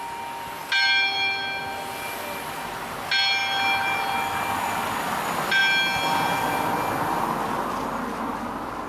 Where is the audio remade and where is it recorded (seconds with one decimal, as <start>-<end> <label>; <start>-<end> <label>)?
0.0-8.9 recorded